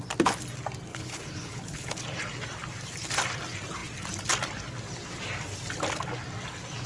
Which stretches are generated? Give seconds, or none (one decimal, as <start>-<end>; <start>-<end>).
0.9-2.0

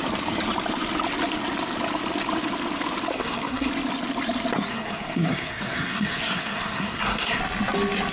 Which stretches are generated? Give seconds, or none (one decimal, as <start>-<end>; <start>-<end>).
3.1-3.7; 4.7-7.4

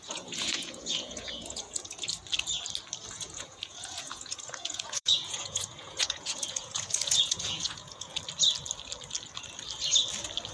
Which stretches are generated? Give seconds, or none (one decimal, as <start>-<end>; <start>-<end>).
0.0-2.1; 3.1-8.1

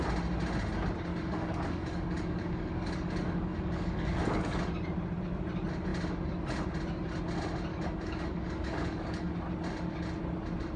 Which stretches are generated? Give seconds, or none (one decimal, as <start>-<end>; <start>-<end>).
1.1-4.6; 7.7-9.3

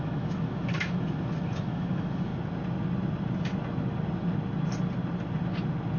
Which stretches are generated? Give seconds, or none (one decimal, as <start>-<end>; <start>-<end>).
0.0-2.3

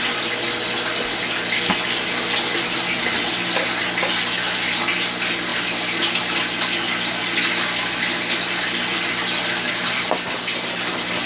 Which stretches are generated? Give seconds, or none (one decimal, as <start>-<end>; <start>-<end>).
none

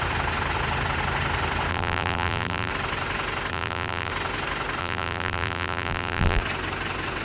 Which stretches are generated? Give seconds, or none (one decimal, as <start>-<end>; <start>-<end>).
1.7-2.7; 3.5-4.1; 4.8-6.4

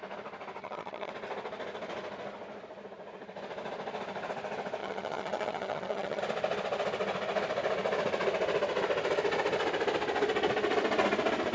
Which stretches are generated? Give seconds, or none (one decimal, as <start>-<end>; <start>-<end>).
0.6-1.1; 4.8-6.2